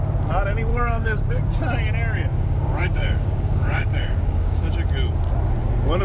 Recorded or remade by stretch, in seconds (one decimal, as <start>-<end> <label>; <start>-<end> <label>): 0.0-0.7 recorded; 0.7-1.4 remade; 1.4-2.3 recorded; 2.3-4.7 remade; 4.7-6.0 recorded